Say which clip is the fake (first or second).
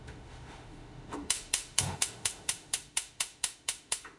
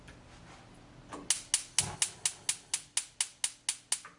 first